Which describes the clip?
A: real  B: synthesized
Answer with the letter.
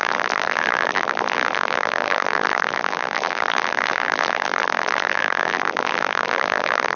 B